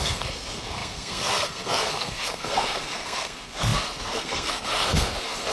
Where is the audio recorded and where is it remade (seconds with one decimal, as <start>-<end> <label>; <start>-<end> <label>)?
0.0-5.5 remade